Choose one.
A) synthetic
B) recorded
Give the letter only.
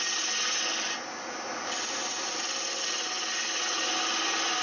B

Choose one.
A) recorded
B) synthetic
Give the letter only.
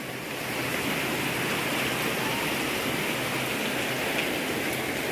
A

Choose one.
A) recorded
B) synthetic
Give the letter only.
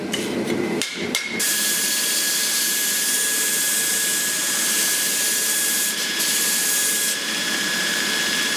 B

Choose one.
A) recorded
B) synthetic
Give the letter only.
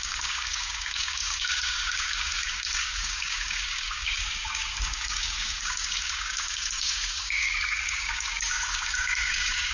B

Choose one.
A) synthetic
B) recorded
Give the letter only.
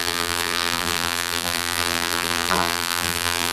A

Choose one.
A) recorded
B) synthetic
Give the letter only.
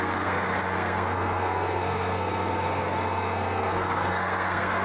B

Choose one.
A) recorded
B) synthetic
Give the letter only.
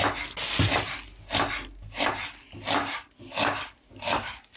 A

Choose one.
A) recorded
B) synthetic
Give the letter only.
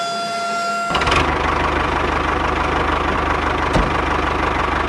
A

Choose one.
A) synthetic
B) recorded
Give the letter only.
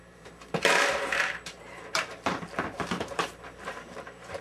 A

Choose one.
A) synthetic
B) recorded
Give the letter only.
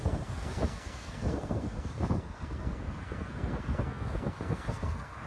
A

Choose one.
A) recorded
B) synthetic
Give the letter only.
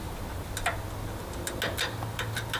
A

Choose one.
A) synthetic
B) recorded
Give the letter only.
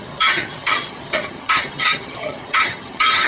A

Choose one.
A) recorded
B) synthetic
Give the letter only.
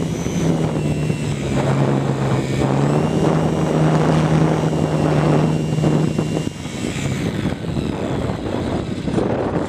A